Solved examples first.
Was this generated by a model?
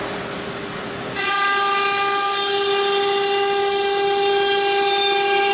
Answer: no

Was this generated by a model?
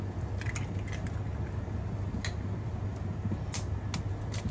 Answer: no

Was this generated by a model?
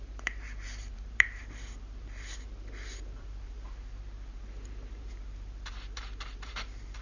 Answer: yes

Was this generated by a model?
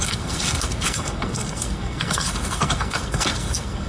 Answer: yes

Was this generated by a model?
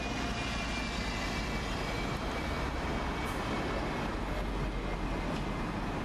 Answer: no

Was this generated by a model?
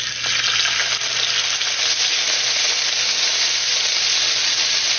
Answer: no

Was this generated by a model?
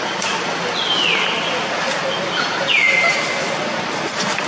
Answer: no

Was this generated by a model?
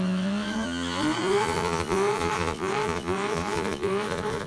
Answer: yes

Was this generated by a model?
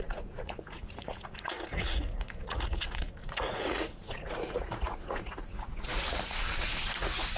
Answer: yes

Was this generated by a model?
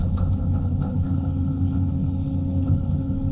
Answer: yes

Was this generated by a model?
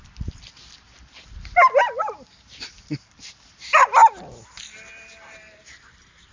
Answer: no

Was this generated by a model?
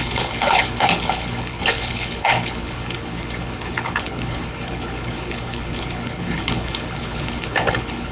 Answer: yes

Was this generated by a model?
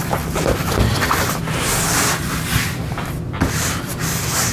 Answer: no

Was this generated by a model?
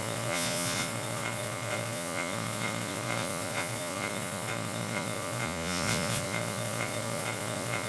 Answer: yes